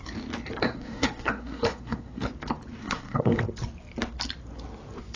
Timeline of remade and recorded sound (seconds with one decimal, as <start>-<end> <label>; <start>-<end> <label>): 0.0-0.6 recorded; 0.6-2.3 remade; 2.3-2.8 recorded; 2.8-3.4 remade; 3.4-5.2 recorded